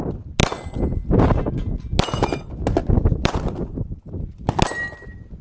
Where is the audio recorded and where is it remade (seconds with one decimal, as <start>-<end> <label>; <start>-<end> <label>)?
0.0-2.8 recorded; 2.8-4.0 remade; 4.0-5.4 recorded